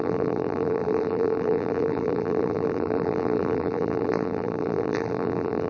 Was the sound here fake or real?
fake